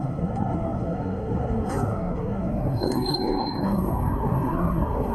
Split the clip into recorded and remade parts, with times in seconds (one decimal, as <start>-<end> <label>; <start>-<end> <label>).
0.0-5.1 remade